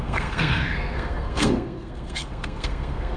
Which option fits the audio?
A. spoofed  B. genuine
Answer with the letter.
A